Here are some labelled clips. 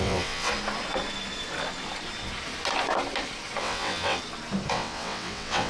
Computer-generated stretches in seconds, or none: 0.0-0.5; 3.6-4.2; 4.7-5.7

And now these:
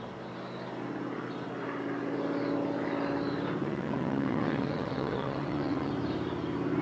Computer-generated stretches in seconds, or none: 3.6-5.9

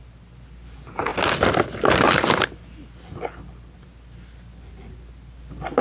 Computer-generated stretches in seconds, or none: none

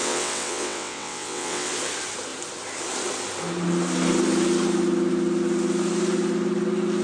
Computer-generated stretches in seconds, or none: 0.0-1.7